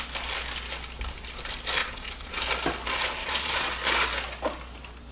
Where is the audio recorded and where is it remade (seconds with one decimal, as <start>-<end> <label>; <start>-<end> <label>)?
0.0-1.8 recorded; 1.8-2.4 remade; 2.4-3.2 recorded; 3.2-3.7 remade; 3.7-5.1 recorded